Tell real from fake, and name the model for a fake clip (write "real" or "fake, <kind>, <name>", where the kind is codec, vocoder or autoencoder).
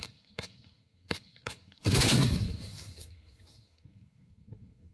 fake, codec, SNAC